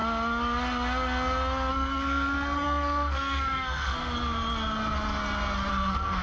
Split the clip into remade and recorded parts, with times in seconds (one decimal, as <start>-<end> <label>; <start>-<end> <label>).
0.0-1.7 recorded; 1.7-4.0 remade; 4.0-5.7 recorded; 5.7-6.2 remade